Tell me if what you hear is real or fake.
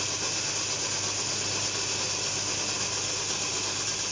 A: real